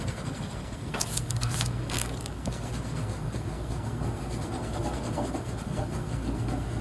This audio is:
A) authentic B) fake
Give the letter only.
B